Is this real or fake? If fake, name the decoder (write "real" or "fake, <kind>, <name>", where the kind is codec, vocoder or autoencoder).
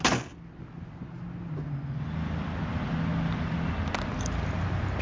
real